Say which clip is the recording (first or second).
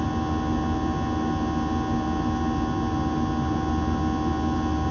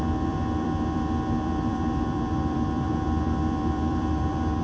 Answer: first